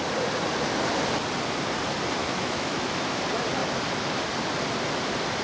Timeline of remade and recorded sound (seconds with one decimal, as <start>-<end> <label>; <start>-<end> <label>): 0.0-2.2 recorded; 2.2-3.2 remade; 3.2-5.4 recorded